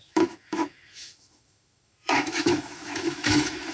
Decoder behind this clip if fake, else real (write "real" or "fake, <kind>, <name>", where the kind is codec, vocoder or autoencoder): fake, autoencoder, DAC-VAE